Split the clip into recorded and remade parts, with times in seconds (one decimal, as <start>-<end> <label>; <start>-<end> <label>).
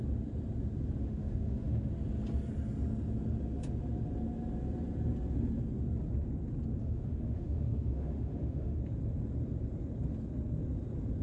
0.0-1.0 recorded; 1.0-1.9 remade; 1.9-6.8 recorded; 6.8-8.8 remade; 8.8-11.2 recorded